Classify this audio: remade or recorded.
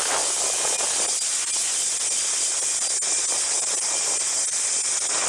recorded